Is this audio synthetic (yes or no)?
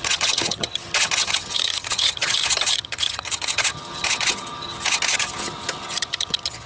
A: yes